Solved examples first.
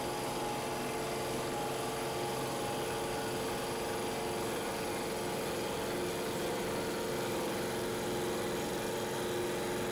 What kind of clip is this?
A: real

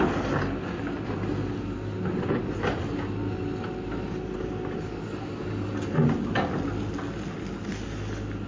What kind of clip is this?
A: real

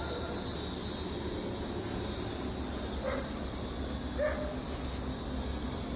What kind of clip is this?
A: real